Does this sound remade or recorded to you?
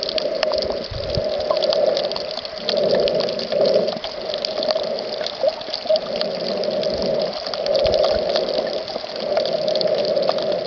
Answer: recorded